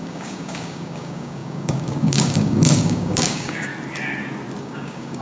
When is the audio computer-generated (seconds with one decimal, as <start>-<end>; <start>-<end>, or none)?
0.0-3.7; 4.6-5.2